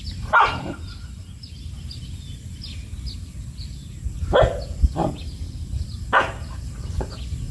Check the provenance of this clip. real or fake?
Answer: real